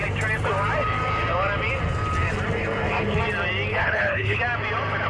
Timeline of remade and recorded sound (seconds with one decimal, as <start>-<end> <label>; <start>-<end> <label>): 0.0-3.7 recorded; 3.7-4.4 remade; 4.4-5.1 recorded